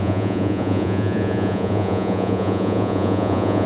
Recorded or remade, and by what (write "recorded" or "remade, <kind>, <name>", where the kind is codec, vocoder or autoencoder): remade, vocoder, Vocos